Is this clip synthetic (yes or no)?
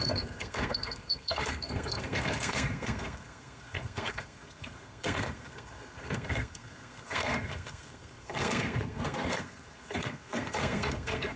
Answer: yes